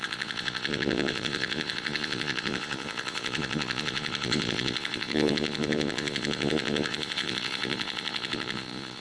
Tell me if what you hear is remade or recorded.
remade